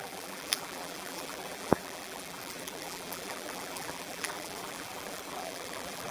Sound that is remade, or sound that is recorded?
remade